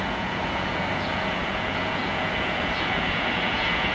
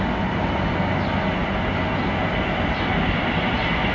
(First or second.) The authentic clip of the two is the second